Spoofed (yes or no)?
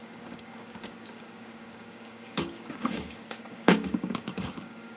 yes